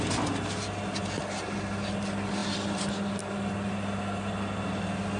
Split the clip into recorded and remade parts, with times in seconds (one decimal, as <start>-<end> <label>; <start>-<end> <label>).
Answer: 0.0-5.2 recorded